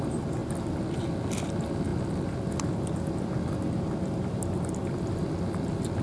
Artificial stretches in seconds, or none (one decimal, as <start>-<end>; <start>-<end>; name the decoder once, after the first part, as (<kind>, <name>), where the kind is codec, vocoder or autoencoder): none